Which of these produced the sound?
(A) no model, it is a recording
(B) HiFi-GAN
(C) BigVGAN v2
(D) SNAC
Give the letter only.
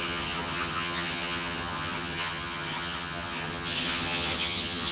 B